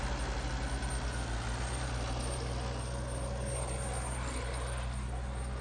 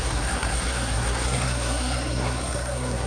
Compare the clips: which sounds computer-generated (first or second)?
second